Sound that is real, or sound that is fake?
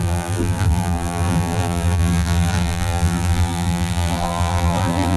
fake